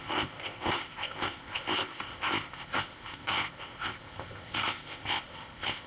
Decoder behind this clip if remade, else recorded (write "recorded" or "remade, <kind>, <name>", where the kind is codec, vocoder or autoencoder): remade, codec, ZipCodec